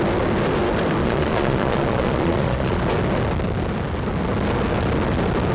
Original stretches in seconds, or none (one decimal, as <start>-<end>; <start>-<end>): 0.0-1.0; 2.8-5.5